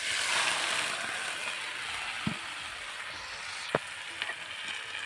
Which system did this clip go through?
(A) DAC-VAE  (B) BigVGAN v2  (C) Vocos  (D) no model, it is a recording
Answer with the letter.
D